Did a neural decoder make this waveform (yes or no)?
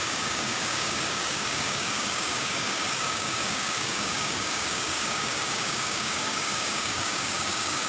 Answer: yes